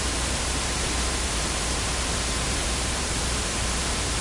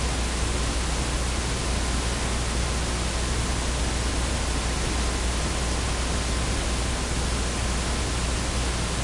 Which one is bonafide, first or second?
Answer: second